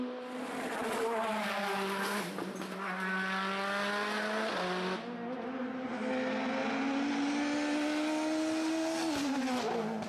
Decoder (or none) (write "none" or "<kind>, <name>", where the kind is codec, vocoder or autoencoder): none